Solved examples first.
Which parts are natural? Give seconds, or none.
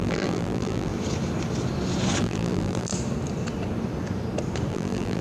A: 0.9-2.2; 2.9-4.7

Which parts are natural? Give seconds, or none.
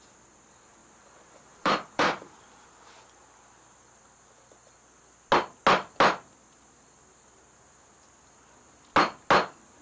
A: 0.0-0.8; 2.4-9.8